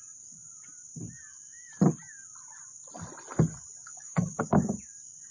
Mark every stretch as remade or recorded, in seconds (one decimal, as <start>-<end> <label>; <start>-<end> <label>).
0.0-3.9 recorded; 3.9-4.4 remade; 4.4-5.3 recorded

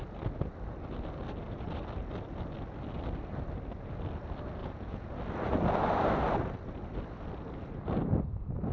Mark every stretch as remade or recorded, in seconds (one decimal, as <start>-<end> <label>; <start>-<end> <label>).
0.0-4.6 recorded; 4.6-5.1 remade; 5.1-8.7 recorded